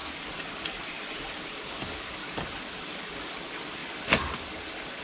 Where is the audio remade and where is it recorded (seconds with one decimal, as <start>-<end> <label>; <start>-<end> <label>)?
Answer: 0.0-5.0 recorded